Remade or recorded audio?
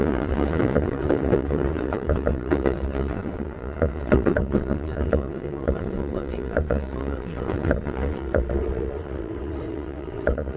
remade